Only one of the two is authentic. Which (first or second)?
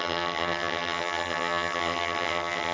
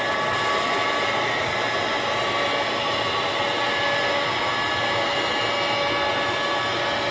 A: second